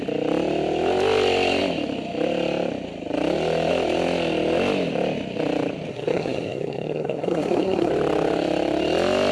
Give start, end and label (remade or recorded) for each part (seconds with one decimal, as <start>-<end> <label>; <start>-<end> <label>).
0.0-5.9 recorded; 5.9-7.9 remade; 7.9-9.3 recorded